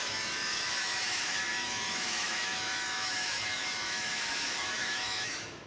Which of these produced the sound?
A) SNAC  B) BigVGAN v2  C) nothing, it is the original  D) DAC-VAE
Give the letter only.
D